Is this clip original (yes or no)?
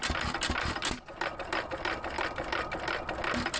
yes